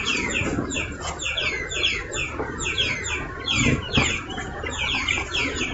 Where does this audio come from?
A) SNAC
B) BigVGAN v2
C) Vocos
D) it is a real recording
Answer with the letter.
C